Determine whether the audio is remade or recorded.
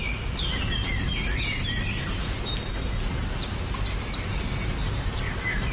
recorded